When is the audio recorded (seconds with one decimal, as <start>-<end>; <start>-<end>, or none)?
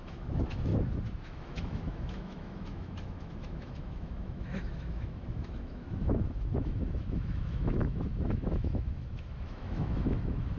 0.7-1.3